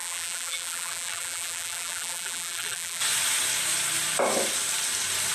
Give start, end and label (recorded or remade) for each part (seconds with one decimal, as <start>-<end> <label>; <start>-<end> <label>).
0.0-3.0 remade; 3.0-5.3 recorded